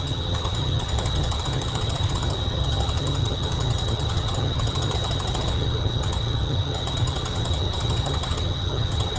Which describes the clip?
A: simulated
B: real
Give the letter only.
A